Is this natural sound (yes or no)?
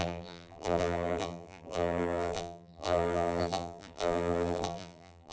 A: no